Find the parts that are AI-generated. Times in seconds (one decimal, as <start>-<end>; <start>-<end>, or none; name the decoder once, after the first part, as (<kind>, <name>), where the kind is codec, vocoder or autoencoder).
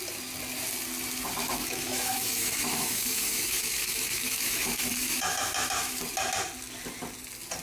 1.4-6.0 (autoencoder, DAC-VAE)